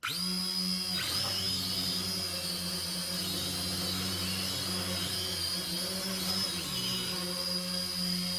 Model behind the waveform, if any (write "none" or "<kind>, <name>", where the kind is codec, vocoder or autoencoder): none